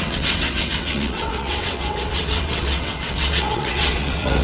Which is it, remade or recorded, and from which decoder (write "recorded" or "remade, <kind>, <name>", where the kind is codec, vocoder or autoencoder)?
remade, vocoder, WaveNeXt